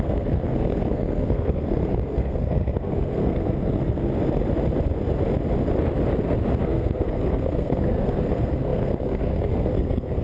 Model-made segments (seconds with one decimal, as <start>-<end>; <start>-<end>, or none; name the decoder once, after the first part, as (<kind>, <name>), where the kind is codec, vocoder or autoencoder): 0.0-4.1 (codec, SNAC); 6.6-10.2